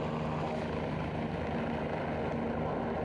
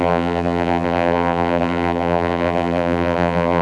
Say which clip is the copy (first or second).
second